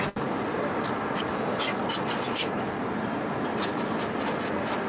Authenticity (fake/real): real